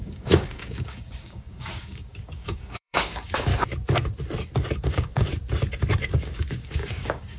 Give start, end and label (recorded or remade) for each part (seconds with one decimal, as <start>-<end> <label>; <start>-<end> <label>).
0.0-3.5 remade; 3.5-4.8 recorded; 4.8-5.3 remade; 5.3-6.0 recorded; 6.0-7.4 remade